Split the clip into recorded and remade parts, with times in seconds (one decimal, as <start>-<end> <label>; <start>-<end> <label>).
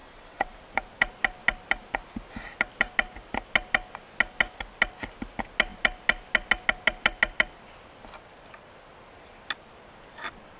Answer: 0.0-0.6 remade; 0.6-10.6 recorded